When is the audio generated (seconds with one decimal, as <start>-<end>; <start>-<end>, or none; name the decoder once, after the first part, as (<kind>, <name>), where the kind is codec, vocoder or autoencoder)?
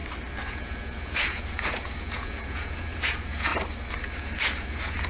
0.5-3.5 (vocoder, Vocos); 4.2-5.1